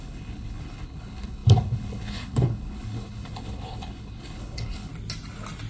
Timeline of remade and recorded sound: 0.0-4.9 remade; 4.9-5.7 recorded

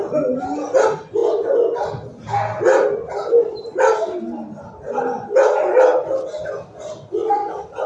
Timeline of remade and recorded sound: 0.0-7.9 recorded

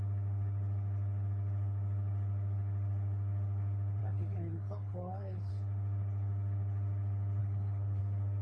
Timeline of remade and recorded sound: 0.0-4.0 recorded; 4.0-5.5 remade; 5.5-7.4 recorded; 7.4-8.0 remade; 8.0-8.4 recorded

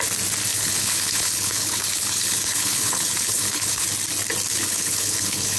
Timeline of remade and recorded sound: 0.0-0.5 recorded; 0.5-3.9 remade; 3.9-4.5 recorded; 4.5-5.6 remade

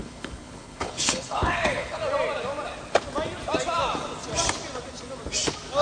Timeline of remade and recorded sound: 0.0-2.0 remade; 2.0-5.8 recorded

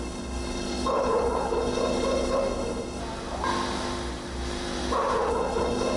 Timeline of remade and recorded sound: 0.0-3.0 remade; 3.0-5.3 recorded; 5.3-6.0 remade

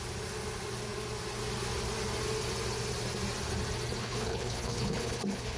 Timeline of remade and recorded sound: 0.0-4.0 recorded; 4.0-5.6 remade

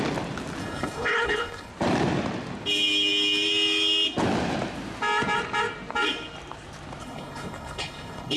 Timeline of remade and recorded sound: 0.0-0.6 recorded; 0.6-1.7 remade; 1.7-7.0 recorded; 7.0-8.4 remade